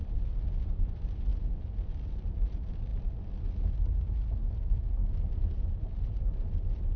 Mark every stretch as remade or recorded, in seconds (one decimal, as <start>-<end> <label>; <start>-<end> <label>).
0.0-2.9 remade; 2.9-4.5 recorded; 4.5-5.0 remade; 5.0-5.8 recorded; 5.8-7.0 remade